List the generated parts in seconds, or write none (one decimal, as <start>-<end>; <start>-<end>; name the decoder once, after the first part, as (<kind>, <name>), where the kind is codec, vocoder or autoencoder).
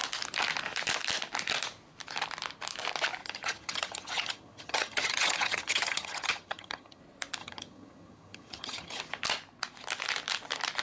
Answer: 3.2-7.0 (vocoder, HiFi-GAN); 7.4-9.0